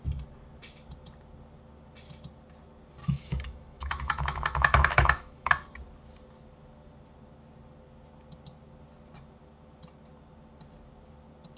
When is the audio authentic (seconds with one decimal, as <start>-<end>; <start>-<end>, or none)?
0.0-3.0; 5.5-11.6